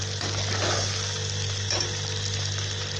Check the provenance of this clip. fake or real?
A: real